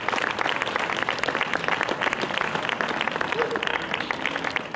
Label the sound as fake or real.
real